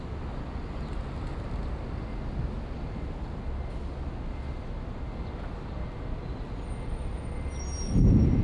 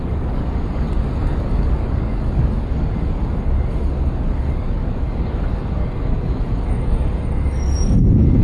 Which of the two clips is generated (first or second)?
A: second